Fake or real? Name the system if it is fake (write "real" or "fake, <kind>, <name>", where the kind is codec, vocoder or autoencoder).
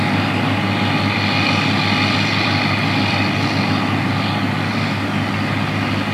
real